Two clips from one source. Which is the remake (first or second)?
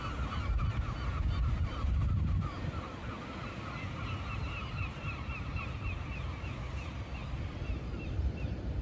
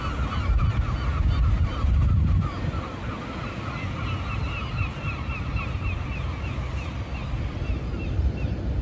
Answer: first